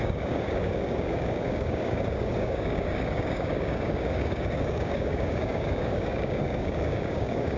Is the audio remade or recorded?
remade